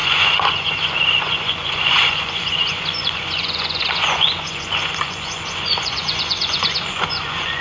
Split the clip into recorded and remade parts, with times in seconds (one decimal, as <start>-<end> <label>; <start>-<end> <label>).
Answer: 0.0-7.6 remade